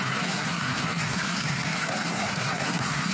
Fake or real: fake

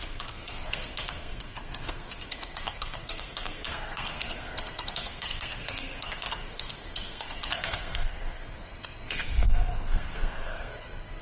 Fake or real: fake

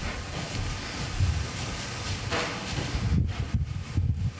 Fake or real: real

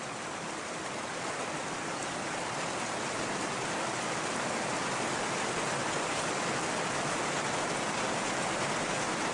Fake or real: real